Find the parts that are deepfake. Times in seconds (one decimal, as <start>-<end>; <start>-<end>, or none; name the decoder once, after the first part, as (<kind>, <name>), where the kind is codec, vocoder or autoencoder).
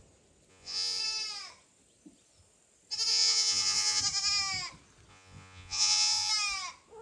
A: 0.5-1.0 (vocoder, Vocos); 3.1-4.0; 5.1-6.3